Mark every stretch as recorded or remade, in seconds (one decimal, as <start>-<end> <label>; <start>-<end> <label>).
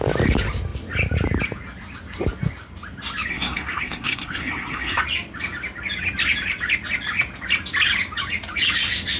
0.0-3.3 recorded; 3.3-5.0 remade; 5.0-9.2 recorded